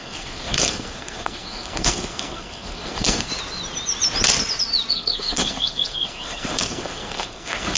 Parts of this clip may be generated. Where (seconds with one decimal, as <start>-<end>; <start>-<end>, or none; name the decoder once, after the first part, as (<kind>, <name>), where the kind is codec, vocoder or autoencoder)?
0.0-3.3 (codec, SNAC); 4.9-7.8